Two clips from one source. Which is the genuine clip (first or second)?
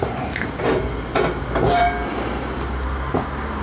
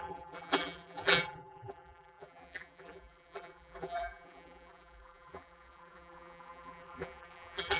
first